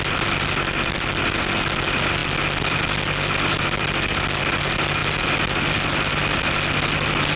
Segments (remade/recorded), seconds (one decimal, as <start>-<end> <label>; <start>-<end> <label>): 0.0-7.4 recorded